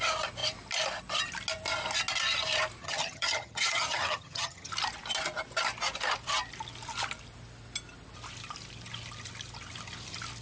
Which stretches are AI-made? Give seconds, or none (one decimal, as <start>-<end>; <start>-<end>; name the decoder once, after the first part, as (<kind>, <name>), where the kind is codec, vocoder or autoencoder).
2.8-4.7 (vocoder, HiFi-GAN)